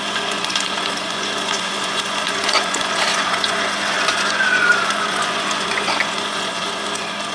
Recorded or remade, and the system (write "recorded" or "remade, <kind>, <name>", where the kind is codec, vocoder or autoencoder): remade, vocoder, Vocos